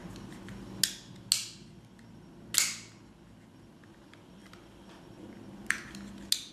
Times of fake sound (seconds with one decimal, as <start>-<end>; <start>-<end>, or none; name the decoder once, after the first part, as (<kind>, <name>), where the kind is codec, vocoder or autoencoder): none